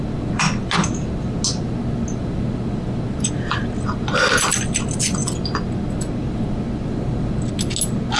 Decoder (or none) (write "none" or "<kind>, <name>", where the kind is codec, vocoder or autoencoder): none